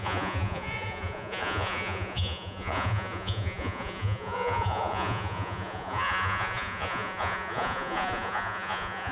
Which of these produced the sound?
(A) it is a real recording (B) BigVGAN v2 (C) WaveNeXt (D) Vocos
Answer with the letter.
D